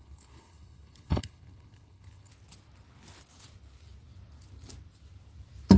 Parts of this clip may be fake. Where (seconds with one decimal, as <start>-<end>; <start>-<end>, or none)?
0.0-2.3